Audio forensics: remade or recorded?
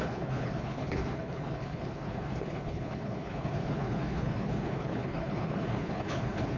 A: remade